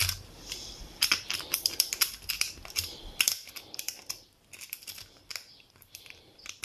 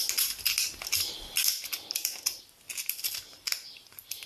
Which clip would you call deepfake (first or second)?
first